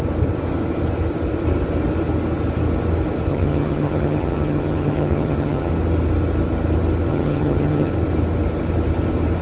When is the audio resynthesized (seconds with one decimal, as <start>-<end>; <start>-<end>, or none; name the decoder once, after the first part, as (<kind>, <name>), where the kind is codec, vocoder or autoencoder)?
3.3-5.7 (vocoder, HiFi-GAN); 7.1-7.9